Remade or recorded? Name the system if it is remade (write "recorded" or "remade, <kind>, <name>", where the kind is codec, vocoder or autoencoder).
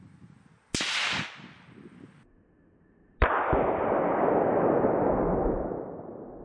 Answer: recorded